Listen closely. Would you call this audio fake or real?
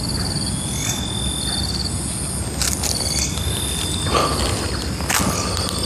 real